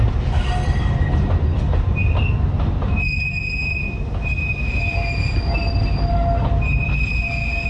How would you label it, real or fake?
real